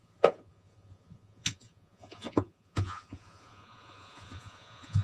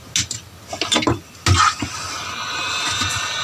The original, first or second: second